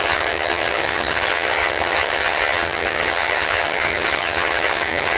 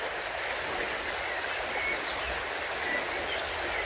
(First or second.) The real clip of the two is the second